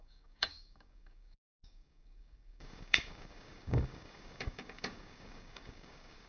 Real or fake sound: fake